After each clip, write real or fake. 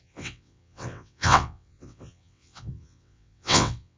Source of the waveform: fake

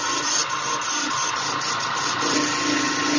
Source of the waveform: real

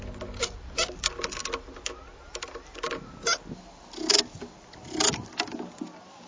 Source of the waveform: real